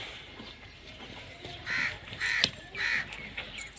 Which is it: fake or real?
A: fake